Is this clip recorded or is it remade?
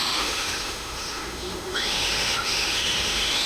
remade